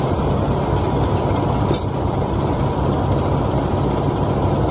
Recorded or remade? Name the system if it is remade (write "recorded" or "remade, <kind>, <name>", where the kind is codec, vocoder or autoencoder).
remade, vocoder, BigVGAN v2